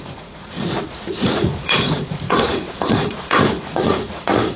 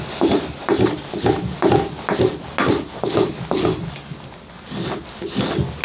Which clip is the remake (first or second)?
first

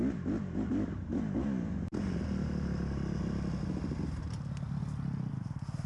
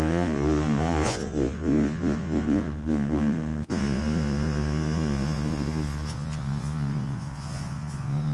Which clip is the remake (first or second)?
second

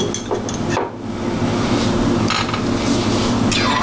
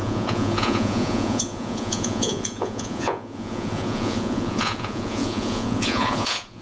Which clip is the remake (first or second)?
second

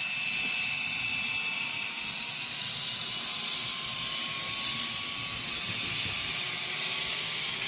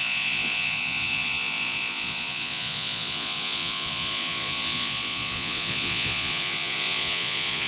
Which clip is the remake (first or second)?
second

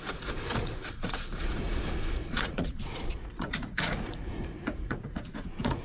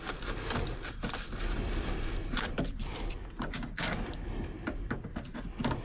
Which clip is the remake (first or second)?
first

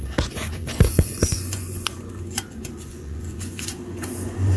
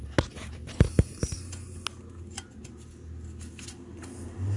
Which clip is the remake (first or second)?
first